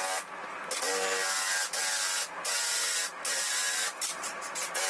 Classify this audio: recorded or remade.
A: recorded